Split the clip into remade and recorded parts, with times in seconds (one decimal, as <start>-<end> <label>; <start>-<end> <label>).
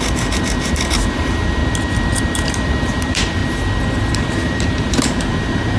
0.0-1.6 remade; 1.6-2.2 recorded; 2.2-3.4 remade; 3.4-4.1 recorded; 4.1-5.8 remade